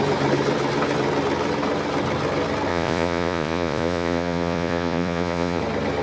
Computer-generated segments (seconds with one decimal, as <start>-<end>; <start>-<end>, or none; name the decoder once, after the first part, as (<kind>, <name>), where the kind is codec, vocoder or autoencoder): 2.7-5.6 (vocoder, Vocos)